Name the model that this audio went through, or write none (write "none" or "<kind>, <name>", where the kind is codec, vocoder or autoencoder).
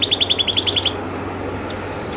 none